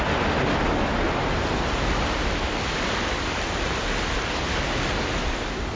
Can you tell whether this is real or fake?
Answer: real